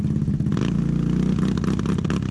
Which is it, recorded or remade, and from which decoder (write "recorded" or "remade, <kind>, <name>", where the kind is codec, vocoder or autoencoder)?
recorded